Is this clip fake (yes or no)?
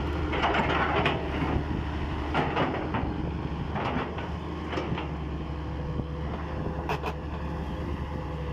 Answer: no